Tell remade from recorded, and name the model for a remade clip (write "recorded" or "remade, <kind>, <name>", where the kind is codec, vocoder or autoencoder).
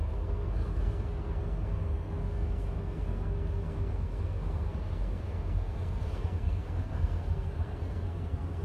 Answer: remade, codec, SNAC